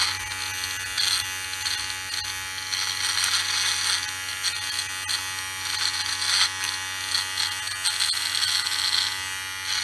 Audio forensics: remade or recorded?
recorded